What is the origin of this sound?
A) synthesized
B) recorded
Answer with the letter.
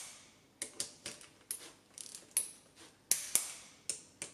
B